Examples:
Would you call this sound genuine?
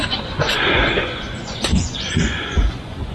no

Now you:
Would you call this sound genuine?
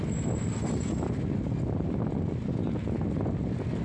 yes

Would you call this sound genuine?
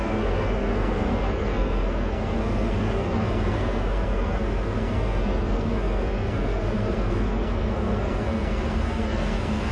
no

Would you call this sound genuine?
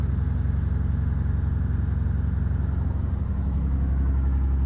yes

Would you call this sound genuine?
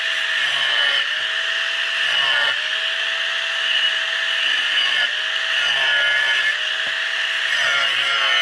yes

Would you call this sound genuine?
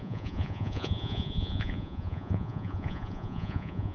no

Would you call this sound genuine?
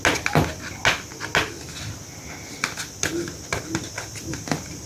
yes